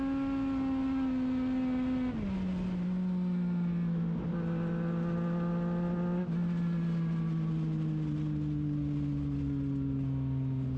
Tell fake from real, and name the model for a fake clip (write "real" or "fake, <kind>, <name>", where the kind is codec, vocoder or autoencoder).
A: real